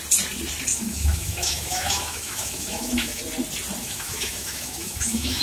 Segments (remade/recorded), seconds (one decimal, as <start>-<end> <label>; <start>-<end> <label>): 0.0-0.7 recorded; 0.7-3.2 remade; 3.2-3.8 recorded; 3.8-5.4 remade